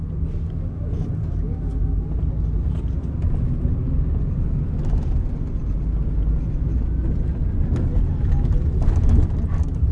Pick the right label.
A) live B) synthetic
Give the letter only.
A